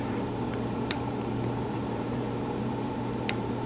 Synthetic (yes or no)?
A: yes